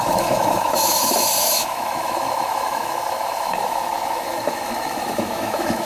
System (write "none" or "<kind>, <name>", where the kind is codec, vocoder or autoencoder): autoencoder, DAC-VAE